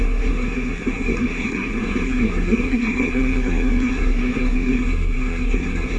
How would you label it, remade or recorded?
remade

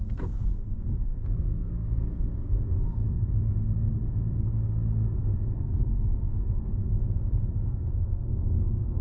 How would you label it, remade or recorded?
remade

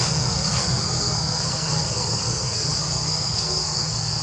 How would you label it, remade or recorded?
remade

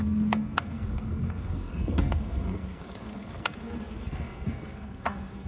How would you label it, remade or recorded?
remade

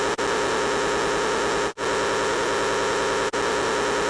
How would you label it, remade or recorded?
recorded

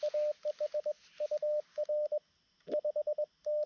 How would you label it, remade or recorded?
recorded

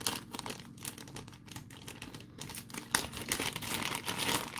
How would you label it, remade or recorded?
recorded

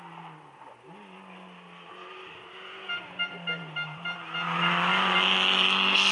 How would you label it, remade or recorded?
recorded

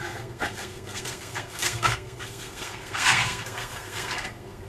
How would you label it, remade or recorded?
remade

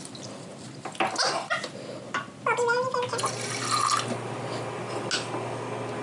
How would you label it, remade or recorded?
recorded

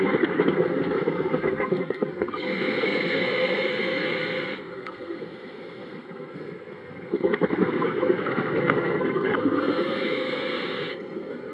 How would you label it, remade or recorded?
remade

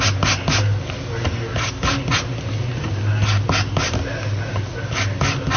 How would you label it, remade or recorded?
recorded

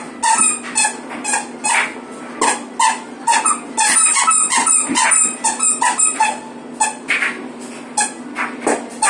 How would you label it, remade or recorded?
recorded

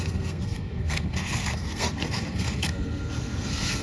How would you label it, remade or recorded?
remade